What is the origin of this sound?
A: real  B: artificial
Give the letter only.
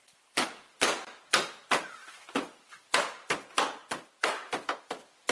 A